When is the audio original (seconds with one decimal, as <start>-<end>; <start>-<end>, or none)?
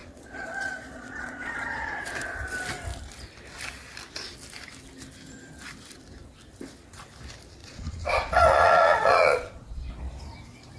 2.0-7.6; 9.9-10.8